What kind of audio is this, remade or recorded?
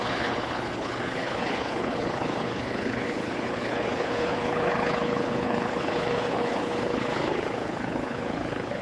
remade